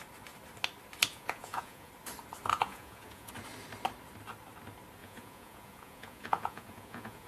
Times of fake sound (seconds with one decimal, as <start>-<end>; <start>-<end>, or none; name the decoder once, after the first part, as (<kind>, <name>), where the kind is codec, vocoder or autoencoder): 1.1-1.9 (vocoder, Vocos); 2.5-3.3; 5.0-7.3